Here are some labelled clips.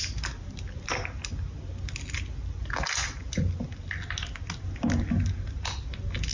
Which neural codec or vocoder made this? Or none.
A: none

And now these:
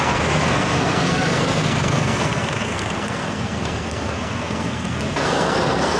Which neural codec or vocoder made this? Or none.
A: codec, SNAC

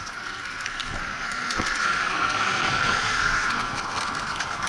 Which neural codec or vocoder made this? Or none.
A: codec, SNAC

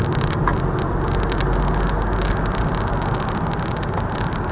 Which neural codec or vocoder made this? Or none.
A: none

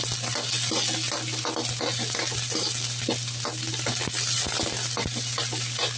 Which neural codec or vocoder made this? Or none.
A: none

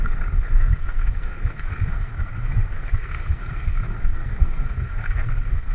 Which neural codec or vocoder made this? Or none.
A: codec, SNAC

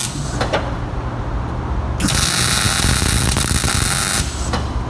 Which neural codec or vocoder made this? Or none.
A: none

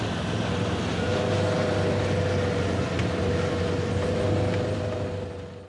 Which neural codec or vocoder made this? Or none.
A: none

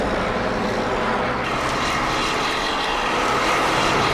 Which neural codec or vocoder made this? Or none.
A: none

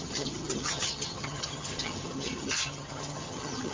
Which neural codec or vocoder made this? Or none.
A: vocoder, HiFi-GAN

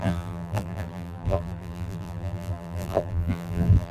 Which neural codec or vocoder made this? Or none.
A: vocoder, BigVGAN v2